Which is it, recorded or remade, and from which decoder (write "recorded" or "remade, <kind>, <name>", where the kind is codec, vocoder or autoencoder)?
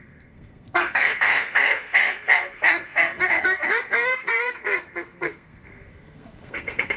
remade, codec, SNAC